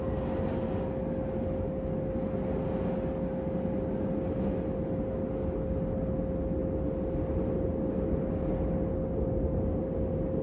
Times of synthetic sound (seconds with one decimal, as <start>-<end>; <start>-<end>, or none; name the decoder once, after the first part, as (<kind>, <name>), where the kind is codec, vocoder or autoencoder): none